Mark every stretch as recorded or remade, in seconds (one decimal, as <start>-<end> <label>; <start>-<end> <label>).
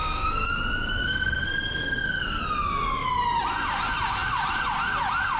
0.0-0.5 remade; 0.5-1.0 recorded; 1.0-2.4 remade; 2.4-5.4 recorded